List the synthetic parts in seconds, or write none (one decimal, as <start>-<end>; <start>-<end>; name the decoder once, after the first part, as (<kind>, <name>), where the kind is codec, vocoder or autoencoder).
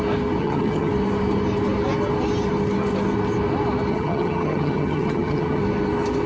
0.4-0.9 (vocoder, HiFi-GAN); 3.9-5.6